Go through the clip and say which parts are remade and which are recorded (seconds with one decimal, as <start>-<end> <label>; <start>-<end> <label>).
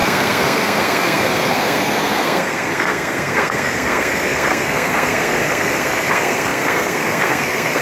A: 0.0-7.8 remade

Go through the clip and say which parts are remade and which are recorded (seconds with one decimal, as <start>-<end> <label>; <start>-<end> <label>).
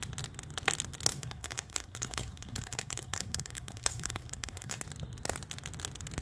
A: 0.0-1.1 recorded; 1.1-4.8 remade; 4.8-6.2 recorded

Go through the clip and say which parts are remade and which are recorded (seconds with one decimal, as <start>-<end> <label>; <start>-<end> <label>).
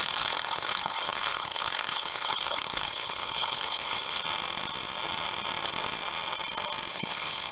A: 0.0-4.2 remade; 4.2-6.9 recorded; 6.9-7.5 remade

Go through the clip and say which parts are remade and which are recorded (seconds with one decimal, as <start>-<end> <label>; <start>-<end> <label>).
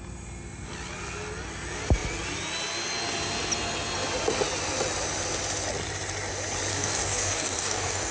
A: 0.0-6.7 recorded; 6.7-8.1 remade